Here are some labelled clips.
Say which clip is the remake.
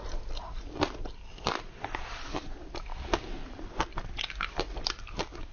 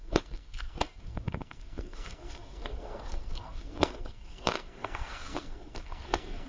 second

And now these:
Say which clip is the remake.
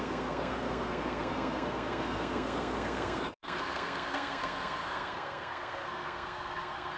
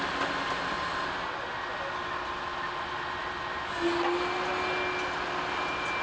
first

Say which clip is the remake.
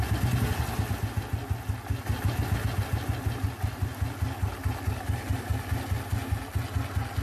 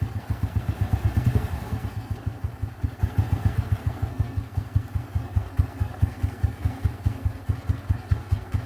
second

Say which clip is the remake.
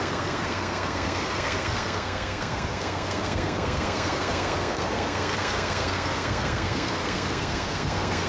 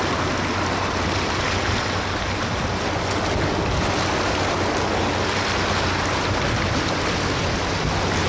first